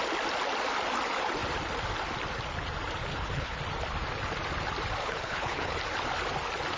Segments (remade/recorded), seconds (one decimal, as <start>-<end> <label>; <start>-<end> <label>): 0.0-3.1 recorded; 3.1-3.6 remade; 3.6-5.0 recorded; 5.0-5.8 remade; 5.8-6.8 recorded